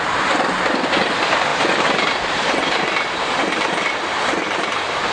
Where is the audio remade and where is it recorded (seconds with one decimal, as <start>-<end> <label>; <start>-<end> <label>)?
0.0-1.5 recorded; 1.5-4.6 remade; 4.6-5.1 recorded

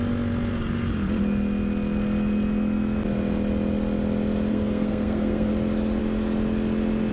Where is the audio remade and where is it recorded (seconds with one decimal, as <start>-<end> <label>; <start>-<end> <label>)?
0.0-4.5 recorded; 4.5-5.5 remade; 5.5-7.1 recorded

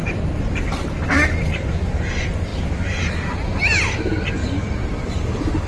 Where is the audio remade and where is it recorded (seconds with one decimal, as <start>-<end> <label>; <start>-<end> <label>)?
0.0-4.4 remade; 4.4-4.9 recorded; 4.9-5.7 remade